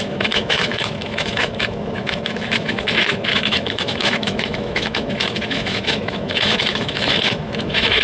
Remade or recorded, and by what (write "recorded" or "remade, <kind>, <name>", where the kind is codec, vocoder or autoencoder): remade, autoencoder, DAC-VAE